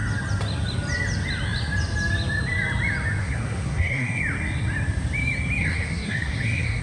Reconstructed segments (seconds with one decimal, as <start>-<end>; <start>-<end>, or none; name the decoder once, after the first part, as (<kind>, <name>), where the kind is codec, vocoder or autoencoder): 3.2-4.2 (codec, SNAC); 5.6-6.8